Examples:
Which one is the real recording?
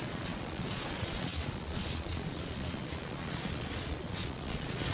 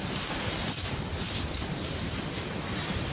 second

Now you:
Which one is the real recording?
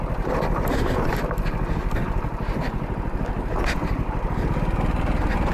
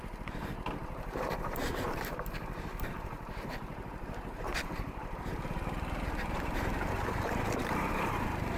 first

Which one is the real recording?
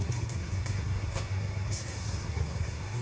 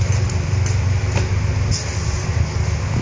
second